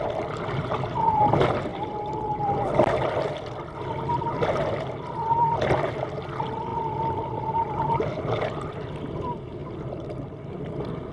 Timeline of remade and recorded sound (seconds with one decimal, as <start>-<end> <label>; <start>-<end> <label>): 0.0-6.7 recorded; 6.7-9.0 remade; 9.0-11.1 recorded